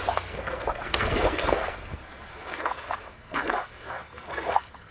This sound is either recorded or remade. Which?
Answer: remade